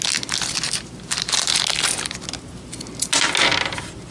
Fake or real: real